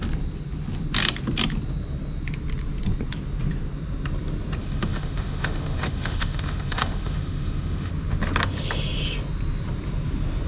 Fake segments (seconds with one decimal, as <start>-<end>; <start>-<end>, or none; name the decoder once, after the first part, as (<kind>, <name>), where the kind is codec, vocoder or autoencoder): 4.6-7.9 (autoencoder, DAC-VAE)